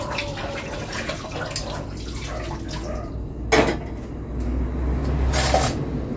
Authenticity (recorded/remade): recorded